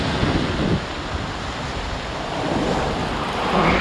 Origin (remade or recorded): recorded